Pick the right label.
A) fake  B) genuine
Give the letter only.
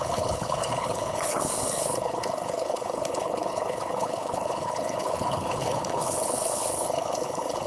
A